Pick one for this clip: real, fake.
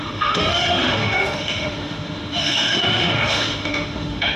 fake